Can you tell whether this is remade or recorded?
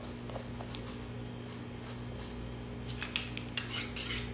recorded